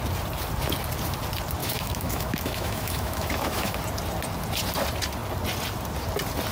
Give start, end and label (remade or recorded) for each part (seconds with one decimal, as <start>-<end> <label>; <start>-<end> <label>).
0.0-1.6 recorded; 1.6-3.8 remade; 3.8-6.5 recorded